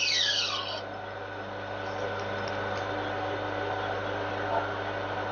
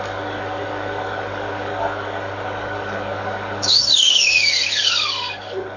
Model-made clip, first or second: second